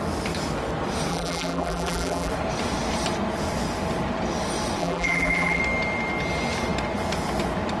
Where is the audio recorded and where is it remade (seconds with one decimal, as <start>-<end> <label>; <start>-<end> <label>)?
0.0-1.1 recorded; 1.1-2.3 remade; 2.3-4.8 recorded; 4.8-5.6 remade; 5.6-7.8 recorded